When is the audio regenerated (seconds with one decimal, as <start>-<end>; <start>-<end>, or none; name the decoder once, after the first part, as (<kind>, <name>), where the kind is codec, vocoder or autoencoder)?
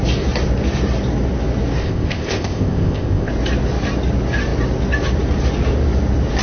1.8-3.3 (codec, ZipCodec)